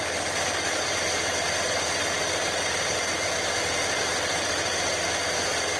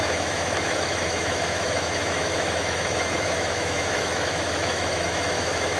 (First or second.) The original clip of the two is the first